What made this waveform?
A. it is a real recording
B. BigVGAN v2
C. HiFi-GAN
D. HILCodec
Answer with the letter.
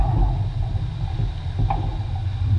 A